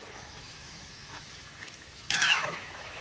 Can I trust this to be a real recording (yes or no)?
no